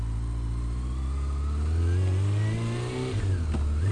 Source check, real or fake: real